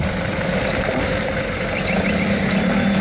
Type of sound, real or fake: real